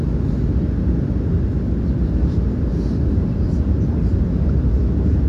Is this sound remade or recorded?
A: recorded